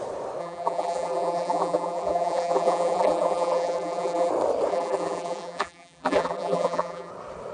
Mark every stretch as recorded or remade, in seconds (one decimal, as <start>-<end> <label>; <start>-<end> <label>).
0.0-0.4 recorded; 0.4-4.3 remade; 4.3-4.7 recorded; 4.7-7.1 remade; 7.1-7.5 recorded